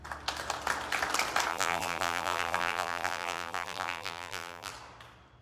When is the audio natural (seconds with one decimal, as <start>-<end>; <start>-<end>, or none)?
0.0-1.5; 4.7-5.4